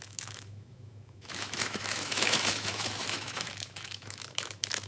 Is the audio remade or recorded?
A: remade